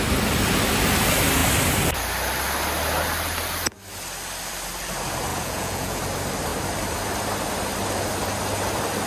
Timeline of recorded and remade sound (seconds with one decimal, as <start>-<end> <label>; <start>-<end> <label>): 0.0-5.3 recorded; 5.3-6.0 remade; 6.0-9.1 recorded